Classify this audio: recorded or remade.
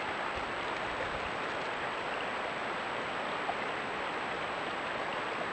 recorded